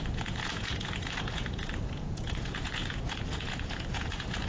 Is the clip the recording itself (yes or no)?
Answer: no